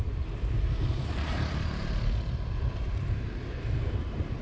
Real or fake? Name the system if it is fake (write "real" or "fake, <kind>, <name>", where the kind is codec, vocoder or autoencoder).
fake, vocoder, BigVGAN v2